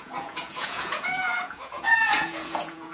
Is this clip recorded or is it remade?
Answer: remade